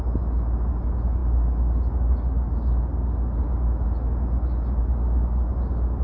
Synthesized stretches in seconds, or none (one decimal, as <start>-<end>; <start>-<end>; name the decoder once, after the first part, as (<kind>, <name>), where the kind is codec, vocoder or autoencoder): none

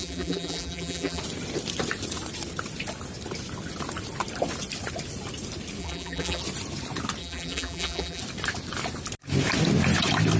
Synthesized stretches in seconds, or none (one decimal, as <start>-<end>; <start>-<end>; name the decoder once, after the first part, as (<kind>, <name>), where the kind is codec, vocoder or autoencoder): 0.0-1.2 (vocoder, BigVGAN v2); 5.8-6.4; 7.2-8.2